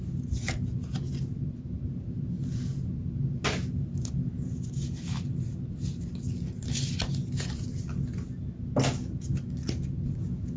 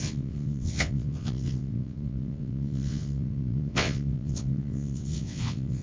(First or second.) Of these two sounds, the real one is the first